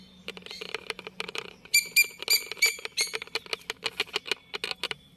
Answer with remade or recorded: recorded